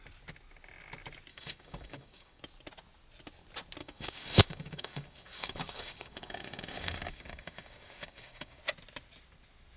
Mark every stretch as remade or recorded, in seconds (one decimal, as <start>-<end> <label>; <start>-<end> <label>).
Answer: 0.0-1.3 recorded; 1.3-2.4 remade; 2.4-3.8 recorded; 3.8-8.6 remade; 8.6-9.8 recorded

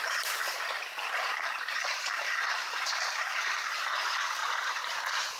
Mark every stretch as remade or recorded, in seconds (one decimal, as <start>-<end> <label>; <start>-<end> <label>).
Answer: 0.0-0.4 remade; 0.4-1.0 recorded; 1.0-4.4 remade; 4.4-5.4 recorded

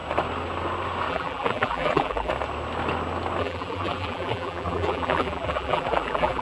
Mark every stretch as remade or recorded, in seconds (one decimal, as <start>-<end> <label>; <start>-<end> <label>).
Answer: 0.0-1.1 recorded; 1.1-2.3 remade; 2.3-3.4 recorded; 3.4-6.4 remade

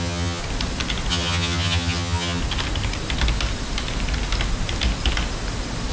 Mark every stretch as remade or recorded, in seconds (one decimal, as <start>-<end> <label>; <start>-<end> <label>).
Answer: 0.0-0.4 remade; 0.4-1.1 recorded; 1.1-2.4 remade; 2.4-5.9 recorded

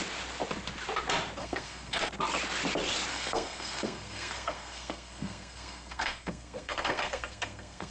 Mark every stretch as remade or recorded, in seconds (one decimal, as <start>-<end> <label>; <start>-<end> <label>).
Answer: 0.0-1.4 recorded; 1.4-2.0 remade; 2.0-3.1 recorded; 3.1-7.9 remade

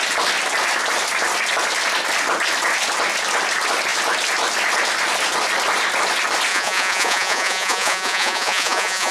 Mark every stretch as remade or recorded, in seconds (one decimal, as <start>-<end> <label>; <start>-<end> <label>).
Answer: 0.0-6.5 recorded; 6.5-9.1 remade

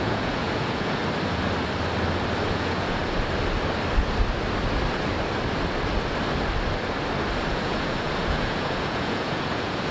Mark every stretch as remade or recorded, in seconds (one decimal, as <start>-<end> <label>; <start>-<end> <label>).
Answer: 0.0-1.0 remade; 1.0-2.5 recorded; 2.5-3.0 remade; 3.0-7.5 recorded; 7.5-9.9 remade

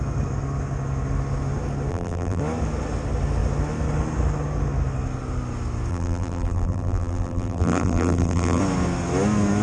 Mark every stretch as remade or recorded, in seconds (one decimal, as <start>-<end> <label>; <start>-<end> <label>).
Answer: 0.0-1.9 recorded; 1.9-2.4 remade; 2.4-5.9 recorded; 5.9-8.6 remade; 8.6-9.6 recorded